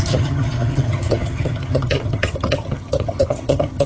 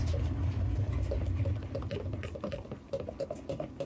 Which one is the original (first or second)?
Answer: second